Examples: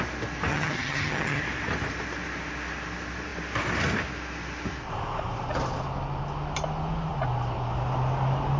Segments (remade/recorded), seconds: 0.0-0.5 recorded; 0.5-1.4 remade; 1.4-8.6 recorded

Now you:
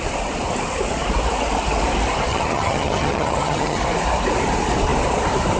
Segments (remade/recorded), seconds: 0.0-2.3 recorded; 2.3-3.8 remade; 3.8-5.6 recorded